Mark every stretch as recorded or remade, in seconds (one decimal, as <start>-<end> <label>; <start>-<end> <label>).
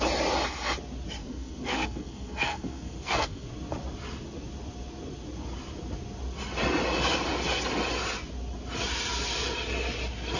0.0-1.2 recorded; 1.2-3.5 remade; 3.5-10.4 recorded